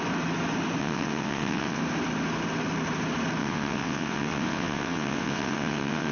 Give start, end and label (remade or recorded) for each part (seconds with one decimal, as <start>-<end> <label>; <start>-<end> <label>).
0.0-0.8 recorded; 0.8-1.8 remade; 1.8-3.4 recorded; 3.4-6.1 remade